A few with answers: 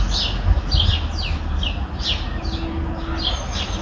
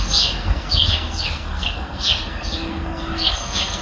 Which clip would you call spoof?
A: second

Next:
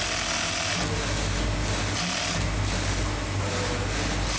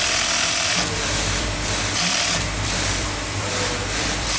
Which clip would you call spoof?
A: second